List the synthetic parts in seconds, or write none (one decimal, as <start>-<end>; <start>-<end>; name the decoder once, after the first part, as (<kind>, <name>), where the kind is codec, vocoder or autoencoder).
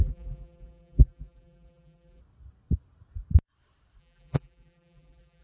0.0-2.2 (vocoder, BigVGAN v2); 4.0-5.4